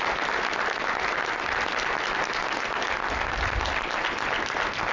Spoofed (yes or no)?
no